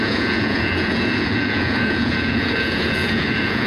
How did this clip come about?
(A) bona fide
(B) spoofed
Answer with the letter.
B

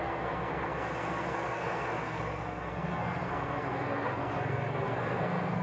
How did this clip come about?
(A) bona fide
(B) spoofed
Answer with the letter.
B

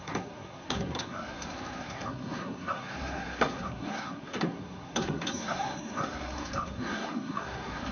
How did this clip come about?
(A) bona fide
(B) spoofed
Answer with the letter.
B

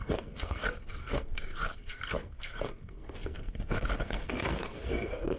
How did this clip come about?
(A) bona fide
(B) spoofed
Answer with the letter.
B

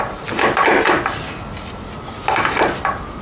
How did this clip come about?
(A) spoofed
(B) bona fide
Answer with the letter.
B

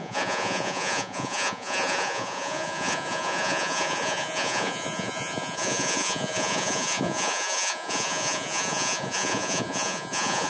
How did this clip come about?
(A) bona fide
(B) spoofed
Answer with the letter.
B